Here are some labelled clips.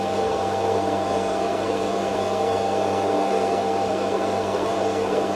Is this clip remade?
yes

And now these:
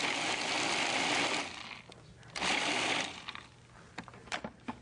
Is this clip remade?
no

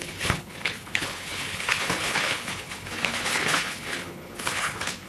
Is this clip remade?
yes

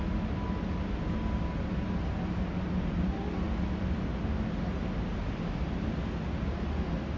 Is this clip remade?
no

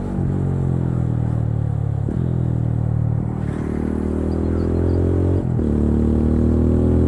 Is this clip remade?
no